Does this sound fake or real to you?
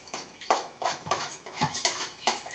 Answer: fake